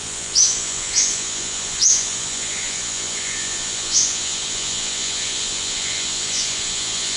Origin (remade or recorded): remade